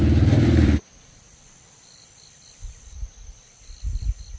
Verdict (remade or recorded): remade